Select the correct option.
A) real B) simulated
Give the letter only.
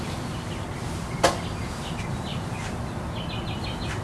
A